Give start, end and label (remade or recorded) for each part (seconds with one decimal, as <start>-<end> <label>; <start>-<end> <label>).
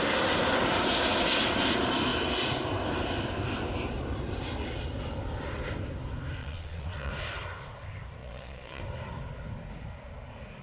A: 0.0-6.4 recorded; 6.4-7.1 remade; 7.1-8.2 recorded; 8.2-8.8 remade; 8.8-10.6 recorded